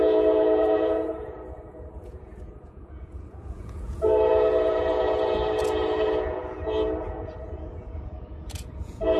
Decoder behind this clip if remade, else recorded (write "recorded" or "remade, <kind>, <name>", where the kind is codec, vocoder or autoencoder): remade, vocoder, Vocos